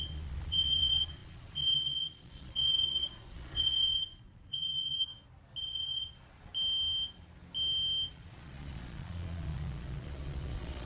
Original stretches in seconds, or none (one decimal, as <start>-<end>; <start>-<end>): 5.1-5.6; 6.5-8.1